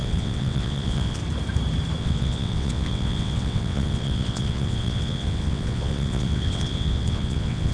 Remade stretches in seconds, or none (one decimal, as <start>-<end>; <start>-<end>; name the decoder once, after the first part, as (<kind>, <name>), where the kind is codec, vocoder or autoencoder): 0.0-1.2 (vocoder, WaveNeXt); 2.0-7.7